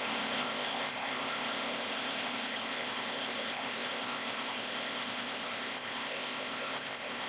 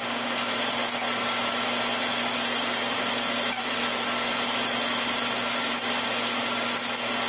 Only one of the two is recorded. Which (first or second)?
second